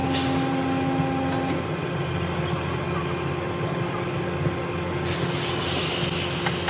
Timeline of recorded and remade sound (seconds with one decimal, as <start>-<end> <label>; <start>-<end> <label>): 0.0-6.7 recorded